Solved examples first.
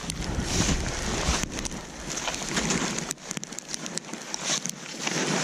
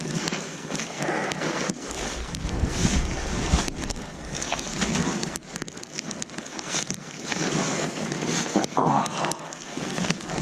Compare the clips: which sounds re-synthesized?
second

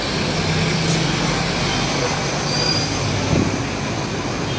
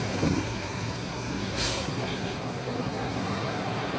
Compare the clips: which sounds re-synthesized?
second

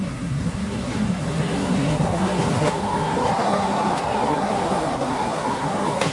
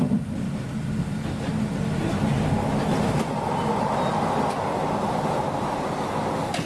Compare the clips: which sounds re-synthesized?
first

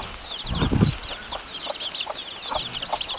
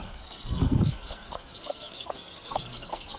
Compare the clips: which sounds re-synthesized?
second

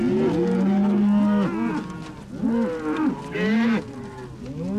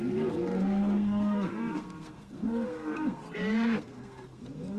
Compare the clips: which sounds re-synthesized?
second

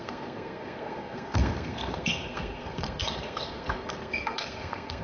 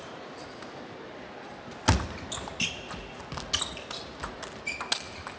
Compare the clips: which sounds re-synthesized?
first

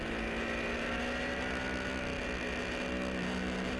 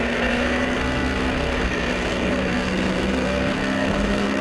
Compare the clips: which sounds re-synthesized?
second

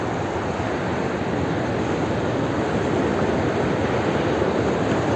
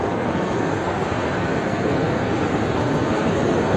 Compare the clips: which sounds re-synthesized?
second